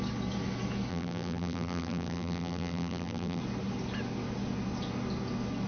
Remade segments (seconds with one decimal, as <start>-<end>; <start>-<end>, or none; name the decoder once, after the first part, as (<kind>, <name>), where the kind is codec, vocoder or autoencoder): 0.9-3.4 (vocoder, BigVGAN v2)